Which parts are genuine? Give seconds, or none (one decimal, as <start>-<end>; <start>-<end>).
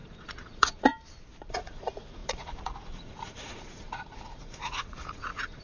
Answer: 0.9-1.5